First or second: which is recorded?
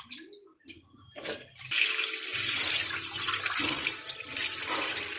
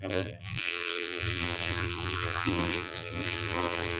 first